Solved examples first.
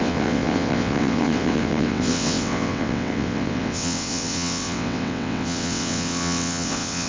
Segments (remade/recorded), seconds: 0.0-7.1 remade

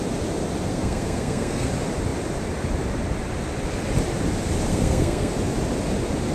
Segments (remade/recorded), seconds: 0.0-0.7 recorded; 0.7-1.7 remade; 1.7-4.7 recorded; 4.7-5.3 remade; 5.3-6.3 recorded

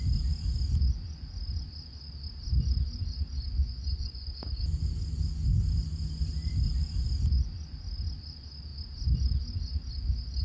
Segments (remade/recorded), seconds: 0.0-3.6 recorded; 3.6-4.3 remade; 4.3-10.4 recorded

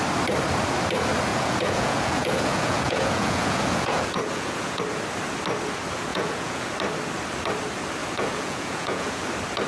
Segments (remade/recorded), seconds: 0.0-1.3 recorded; 1.3-4.8 remade; 4.8-6.1 recorded; 6.1-6.7 remade; 6.7-8.0 recorded; 8.0-9.2 remade; 9.2-9.7 recorded

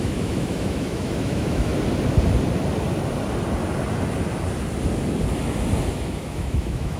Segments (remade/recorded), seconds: 0.0-1.7 remade; 1.7-5.9 recorded; 5.9-7.0 remade